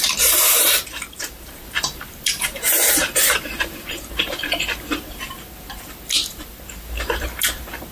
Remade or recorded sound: remade